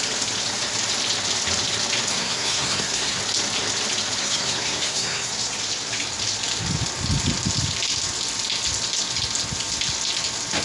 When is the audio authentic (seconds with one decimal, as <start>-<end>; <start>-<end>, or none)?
0.0-2.1; 3.2-4.2; 5.3-10.6